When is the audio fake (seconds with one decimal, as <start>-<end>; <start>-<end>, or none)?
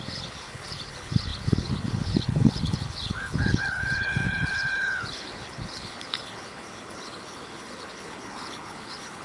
0.0-9.2